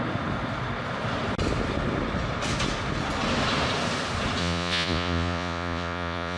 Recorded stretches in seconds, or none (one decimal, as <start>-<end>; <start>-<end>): 0.0-4.4